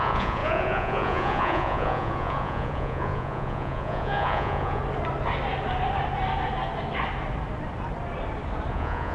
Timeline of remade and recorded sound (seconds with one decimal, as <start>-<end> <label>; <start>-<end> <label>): 0.0-4.8 remade; 4.8-8.7 recorded; 8.7-9.1 remade